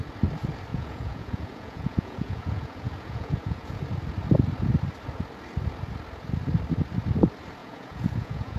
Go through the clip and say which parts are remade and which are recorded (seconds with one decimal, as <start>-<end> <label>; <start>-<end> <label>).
0.0-0.7 recorded; 0.7-3.8 remade; 3.8-7.6 recorded; 7.6-8.6 remade